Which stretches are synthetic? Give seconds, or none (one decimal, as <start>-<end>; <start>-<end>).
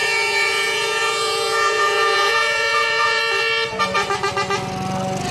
0.0-3.2